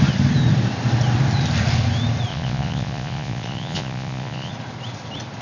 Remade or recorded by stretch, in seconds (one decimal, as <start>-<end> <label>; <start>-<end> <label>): 0.0-2.3 recorded; 2.3-4.5 remade; 4.5-5.4 recorded